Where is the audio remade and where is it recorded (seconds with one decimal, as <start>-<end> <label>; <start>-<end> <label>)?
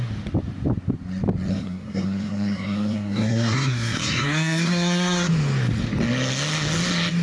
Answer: 0.0-1.5 recorded; 1.5-5.3 remade; 5.3-7.2 recorded